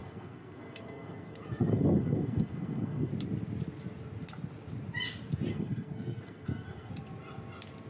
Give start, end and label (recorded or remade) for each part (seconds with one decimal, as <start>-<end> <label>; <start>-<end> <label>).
0.0-3.1 remade; 3.1-5.5 recorded; 5.5-6.9 remade; 6.9-7.9 recorded